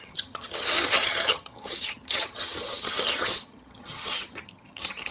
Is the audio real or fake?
fake